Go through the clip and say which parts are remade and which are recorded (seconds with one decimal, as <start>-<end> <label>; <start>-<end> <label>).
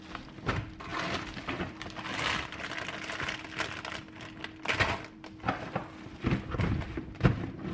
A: 0.0-7.7 recorded